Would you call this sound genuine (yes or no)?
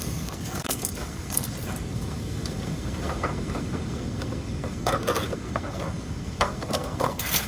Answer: no